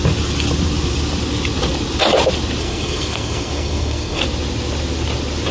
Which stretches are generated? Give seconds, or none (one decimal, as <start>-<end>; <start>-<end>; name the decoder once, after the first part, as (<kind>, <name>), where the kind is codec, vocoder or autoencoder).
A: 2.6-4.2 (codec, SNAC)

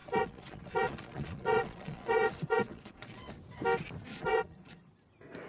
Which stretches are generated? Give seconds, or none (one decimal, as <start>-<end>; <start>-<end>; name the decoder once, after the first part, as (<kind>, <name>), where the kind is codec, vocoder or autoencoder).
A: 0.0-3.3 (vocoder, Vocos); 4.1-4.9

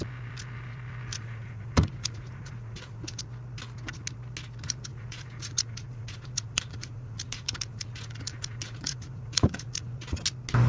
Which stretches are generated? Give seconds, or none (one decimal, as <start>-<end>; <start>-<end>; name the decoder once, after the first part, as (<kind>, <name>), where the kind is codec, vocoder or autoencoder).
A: 1.1-3.2 (vocoder, Vocos); 4.9-10.2

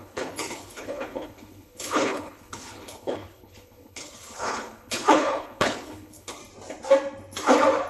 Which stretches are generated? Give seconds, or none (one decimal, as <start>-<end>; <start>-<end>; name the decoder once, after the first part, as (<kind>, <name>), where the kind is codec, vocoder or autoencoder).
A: 0.0-6.4 (codec, HILCodec)